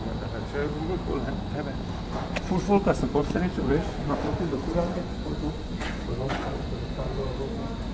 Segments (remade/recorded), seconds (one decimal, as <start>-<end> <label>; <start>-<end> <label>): 0.0-3.2 recorded; 3.2-7.4 remade; 7.4-7.9 recorded